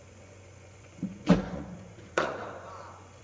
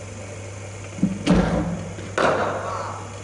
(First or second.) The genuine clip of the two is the second